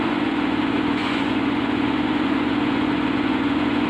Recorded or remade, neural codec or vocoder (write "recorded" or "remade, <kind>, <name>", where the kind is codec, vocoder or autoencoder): remade, vocoder, Vocos